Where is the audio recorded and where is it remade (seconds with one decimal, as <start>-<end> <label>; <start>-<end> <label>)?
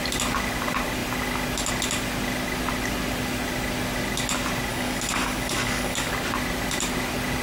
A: 0.0-4.7 recorded; 4.7-6.1 remade; 6.1-7.4 recorded